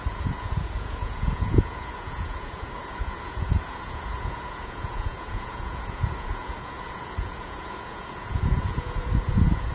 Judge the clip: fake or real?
fake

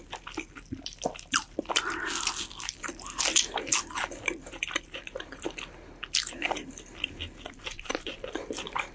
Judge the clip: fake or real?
real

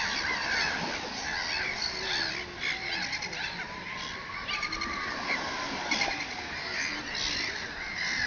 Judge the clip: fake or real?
real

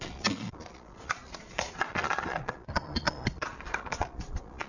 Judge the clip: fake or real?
fake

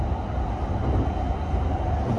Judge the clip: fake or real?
real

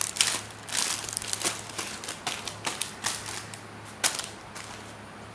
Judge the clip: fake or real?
real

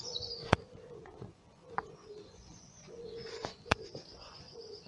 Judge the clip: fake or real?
fake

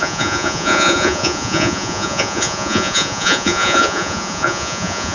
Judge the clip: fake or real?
fake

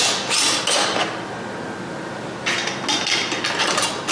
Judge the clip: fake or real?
real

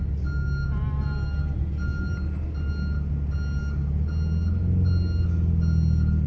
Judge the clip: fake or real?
real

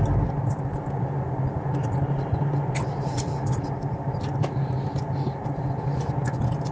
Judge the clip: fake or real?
real